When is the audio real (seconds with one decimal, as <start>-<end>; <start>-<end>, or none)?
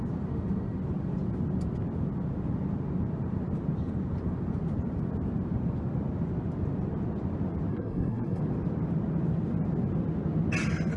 0.0-7.7; 8.4-11.0